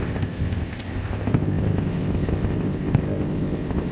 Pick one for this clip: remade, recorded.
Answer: remade